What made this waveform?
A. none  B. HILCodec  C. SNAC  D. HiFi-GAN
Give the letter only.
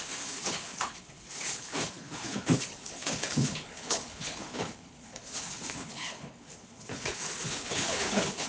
B